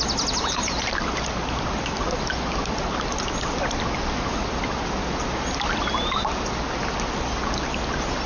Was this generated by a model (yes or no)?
no